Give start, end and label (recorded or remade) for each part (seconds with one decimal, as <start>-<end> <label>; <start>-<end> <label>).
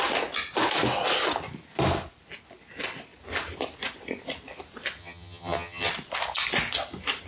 0.0-5.0 recorded; 5.0-5.9 remade; 5.9-7.3 recorded